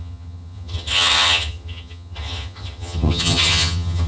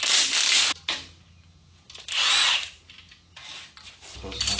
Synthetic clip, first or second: first